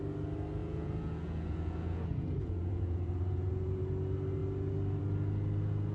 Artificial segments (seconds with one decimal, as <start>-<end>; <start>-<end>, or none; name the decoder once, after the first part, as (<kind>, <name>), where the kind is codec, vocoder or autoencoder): 0.6-3.8 (vocoder, Vocos)